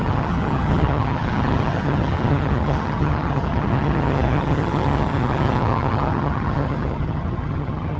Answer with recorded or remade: remade